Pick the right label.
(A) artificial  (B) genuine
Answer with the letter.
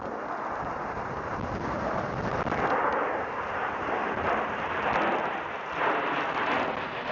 B